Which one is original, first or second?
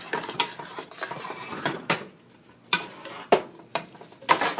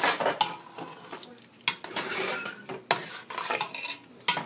second